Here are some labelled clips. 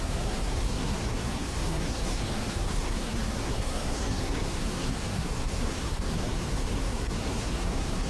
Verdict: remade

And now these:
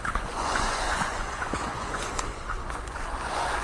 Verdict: remade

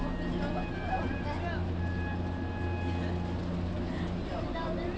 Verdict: recorded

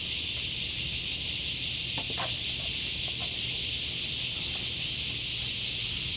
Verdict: recorded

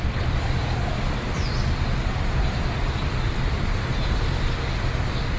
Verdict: remade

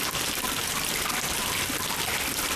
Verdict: recorded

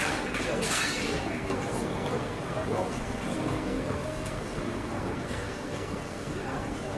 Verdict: remade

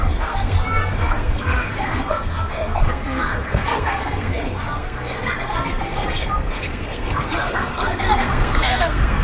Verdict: remade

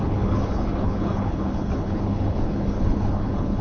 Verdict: remade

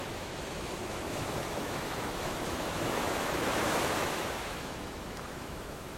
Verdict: remade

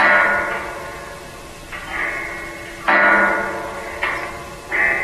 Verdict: recorded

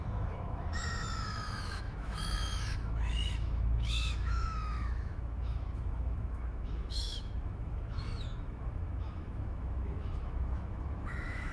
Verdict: remade